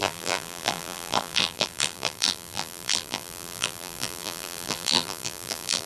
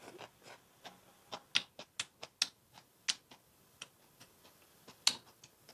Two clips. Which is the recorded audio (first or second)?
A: second